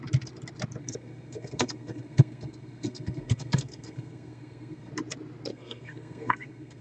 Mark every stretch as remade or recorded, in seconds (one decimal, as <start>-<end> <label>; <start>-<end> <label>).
0.0-0.8 recorded; 0.8-4.9 remade; 4.9-5.5 recorded; 5.5-6.8 remade